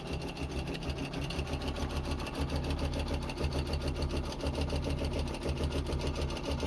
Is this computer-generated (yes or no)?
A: no